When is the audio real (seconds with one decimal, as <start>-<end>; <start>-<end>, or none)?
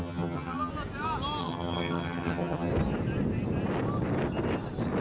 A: 0.7-1.4; 2.7-5.0